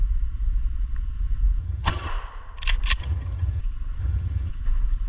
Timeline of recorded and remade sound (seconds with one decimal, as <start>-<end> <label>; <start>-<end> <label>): 0.0-1.6 recorded; 1.6-2.1 remade; 2.1-3.0 recorded; 3.0-3.6 remade; 3.6-4.0 recorded; 4.0-4.5 remade; 4.5-5.1 recorded